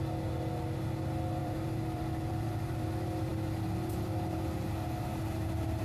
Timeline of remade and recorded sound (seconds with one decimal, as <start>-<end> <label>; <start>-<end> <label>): 0.0-1.4 recorded; 1.4-2.9 remade; 2.9-5.8 recorded